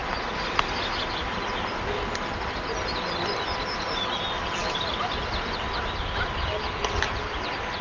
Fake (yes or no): no